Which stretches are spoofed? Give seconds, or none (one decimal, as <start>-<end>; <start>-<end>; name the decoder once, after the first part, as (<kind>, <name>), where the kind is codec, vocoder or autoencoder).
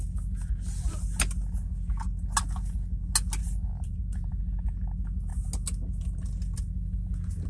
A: 3.4-4.4 (vocoder, BigVGAN v2)